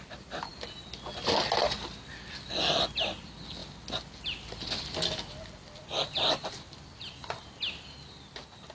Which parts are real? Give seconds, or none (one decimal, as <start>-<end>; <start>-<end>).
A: 0.0-8.7